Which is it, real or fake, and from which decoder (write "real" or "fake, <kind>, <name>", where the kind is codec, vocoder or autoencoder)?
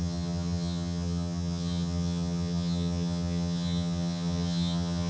fake, vocoder, HiFi-GAN